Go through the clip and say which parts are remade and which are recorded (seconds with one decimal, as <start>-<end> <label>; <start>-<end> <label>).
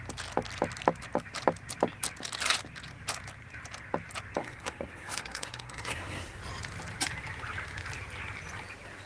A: 0.0-4.4 recorded; 4.4-6.4 remade; 6.4-9.1 recorded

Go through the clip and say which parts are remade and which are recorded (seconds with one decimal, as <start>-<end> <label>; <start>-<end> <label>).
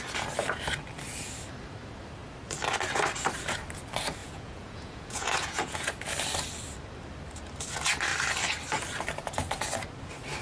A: 0.0-4.2 recorded; 4.2-5.9 remade; 5.9-10.4 recorded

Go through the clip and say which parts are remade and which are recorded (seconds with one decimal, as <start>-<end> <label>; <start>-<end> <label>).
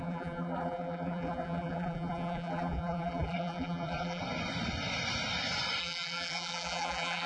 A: 0.0-4.2 remade; 4.2-5.8 recorded; 5.8-7.3 remade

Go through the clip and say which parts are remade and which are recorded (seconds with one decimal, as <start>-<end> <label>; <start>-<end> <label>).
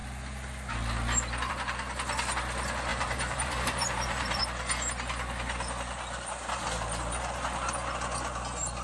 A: 0.0-2.9 recorded; 2.9-4.4 remade; 4.4-8.8 recorded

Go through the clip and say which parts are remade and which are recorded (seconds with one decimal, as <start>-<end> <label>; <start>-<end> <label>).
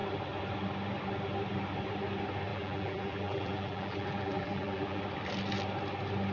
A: 0.0-2.5 recorded; 2.5-5.0 remade; 5.0-6.3 recorded